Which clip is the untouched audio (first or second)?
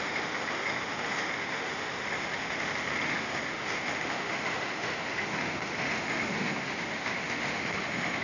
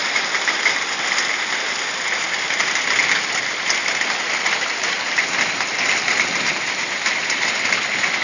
second